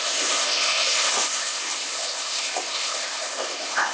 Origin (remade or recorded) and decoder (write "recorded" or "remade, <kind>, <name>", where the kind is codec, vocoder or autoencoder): remade, codec, ZipCodec